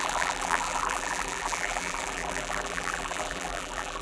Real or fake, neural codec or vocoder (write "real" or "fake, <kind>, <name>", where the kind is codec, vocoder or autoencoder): fake, vocoder, BigVGAN v2